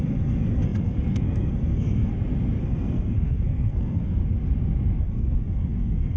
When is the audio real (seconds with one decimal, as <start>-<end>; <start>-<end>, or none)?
2.1-2.6; 4.2-5.0